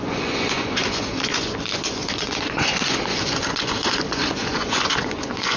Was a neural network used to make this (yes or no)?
yes